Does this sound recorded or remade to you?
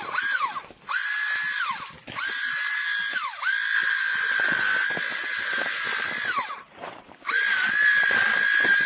recorded